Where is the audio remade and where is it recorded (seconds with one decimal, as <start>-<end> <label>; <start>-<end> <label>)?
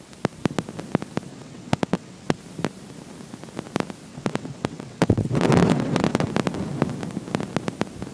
0.0-1.3 recorded; 1.3-2.4 remade; 2.4-4.1 recorded; 4.1-6.3 remade; 6.3-8.1 recorded